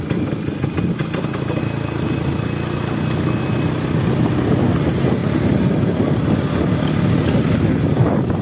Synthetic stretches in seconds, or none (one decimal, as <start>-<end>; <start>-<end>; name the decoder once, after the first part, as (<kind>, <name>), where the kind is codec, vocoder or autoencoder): 1.0-1.6 (vocoder, BigVGAN v2); 5.2-7.4